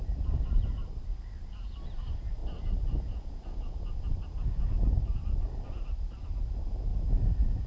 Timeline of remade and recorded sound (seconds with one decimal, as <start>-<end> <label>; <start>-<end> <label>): 0.0-2.4 remade; 2.4-4.9 recorded; 4.9-6.9 remade; 6.9-7.7 recorded